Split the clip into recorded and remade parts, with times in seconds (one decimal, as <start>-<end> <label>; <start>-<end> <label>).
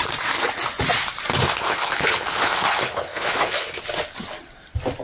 0.0-1.4 recorded; 1.4-3.8 remade; 3.8-5.0 recorded